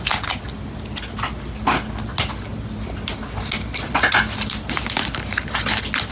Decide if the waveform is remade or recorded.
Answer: recorded